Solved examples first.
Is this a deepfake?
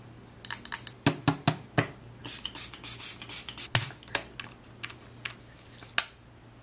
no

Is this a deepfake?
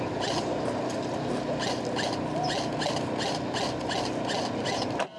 no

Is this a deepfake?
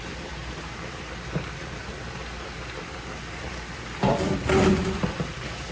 yes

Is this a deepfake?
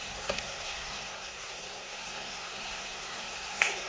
yes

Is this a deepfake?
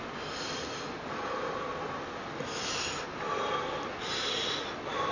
no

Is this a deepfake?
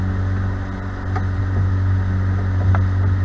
no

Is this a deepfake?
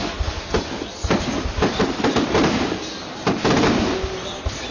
no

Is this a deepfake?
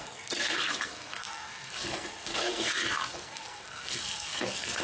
yes